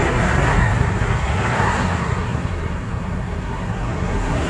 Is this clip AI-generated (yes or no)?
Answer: yes